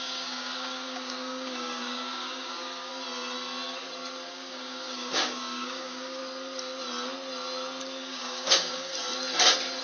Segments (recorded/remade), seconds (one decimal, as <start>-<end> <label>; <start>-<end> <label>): 0.0-2.9 remade; 2.9-4.3 recorded; 4.3-6.2 remade; 6.2-8.0 recorded; 8.0-8.9 remade; 8.9-9.8 recorded